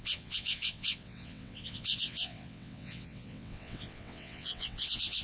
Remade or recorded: remade